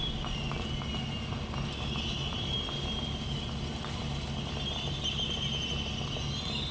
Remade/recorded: recorded